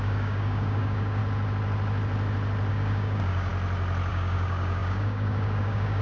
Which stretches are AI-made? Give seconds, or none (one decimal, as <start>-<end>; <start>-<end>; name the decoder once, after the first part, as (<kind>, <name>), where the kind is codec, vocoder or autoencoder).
0.0-1.2 (codec, DAC); 2.7-3.5; 4.1-6.0